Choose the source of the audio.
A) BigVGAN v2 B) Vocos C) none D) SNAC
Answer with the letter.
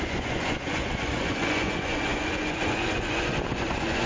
B